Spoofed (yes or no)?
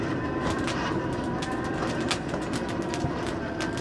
no